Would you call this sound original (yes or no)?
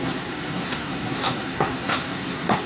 no